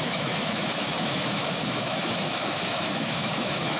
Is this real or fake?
fake